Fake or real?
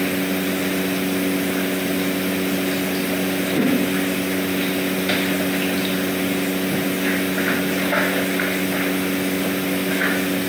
real